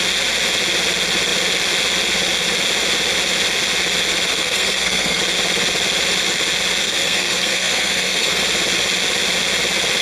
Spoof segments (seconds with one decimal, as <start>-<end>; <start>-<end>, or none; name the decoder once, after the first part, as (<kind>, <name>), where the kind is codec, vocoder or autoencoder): 4.3-5.2 (codec, SNAC); 6.8-8.4